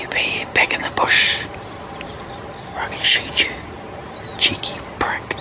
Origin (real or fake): real